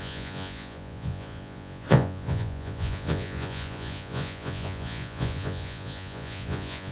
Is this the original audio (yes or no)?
no